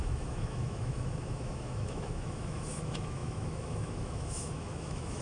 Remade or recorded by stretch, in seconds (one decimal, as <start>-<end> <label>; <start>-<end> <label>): 0.0-5.2 remade